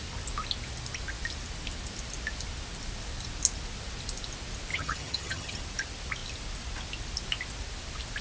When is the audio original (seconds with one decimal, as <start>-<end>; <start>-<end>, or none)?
0.0-4.7; 5.6-8.2